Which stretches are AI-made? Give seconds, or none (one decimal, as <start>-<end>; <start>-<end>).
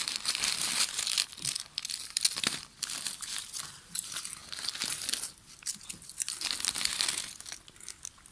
none